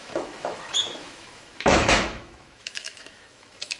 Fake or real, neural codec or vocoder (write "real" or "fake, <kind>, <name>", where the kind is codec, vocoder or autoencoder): fake, autoencoder, DAC-VAE